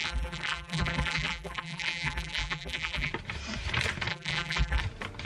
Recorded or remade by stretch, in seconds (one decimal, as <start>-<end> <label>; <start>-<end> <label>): 0.0-3.1 remade; 3.1-4.1 recorded; 4.1-4.8 remade; 4.8-5.2 recorded